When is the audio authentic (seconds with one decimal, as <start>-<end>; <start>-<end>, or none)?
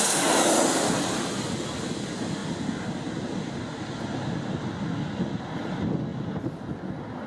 0.0-7.3